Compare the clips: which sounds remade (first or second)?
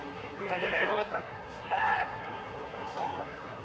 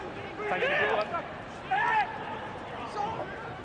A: first